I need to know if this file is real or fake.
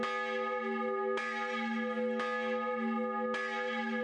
real